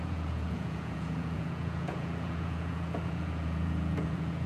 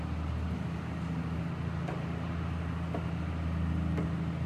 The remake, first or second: first